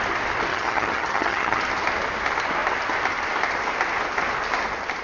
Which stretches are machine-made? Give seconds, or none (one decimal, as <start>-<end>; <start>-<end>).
0.5-1.6

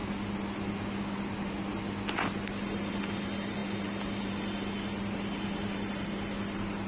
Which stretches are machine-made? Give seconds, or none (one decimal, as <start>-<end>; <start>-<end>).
none

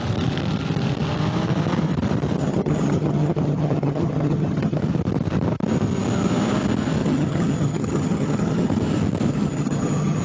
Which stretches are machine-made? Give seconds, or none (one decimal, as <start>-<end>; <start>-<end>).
2.4-4.8; 7.0-8.7; 9.3-10.2

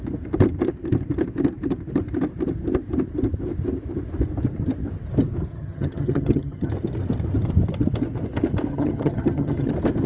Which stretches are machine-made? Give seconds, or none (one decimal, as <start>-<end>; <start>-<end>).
5.5-6.7; 8.7-9.7

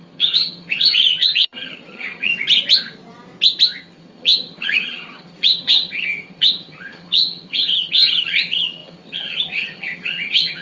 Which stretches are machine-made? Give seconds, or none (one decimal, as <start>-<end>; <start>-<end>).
0.0-2.3; 3.8-10.6